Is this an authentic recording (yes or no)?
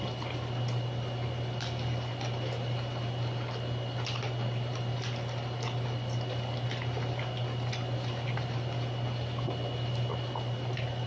yes